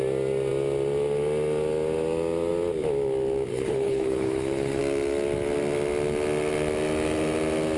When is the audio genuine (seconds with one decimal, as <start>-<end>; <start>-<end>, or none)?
0.0-3.5; 4.8-7.8